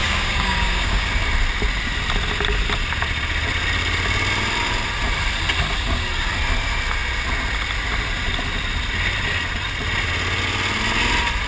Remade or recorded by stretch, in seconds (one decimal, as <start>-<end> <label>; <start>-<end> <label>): 0.0-1.1 remade; 1.1-11.5 recorded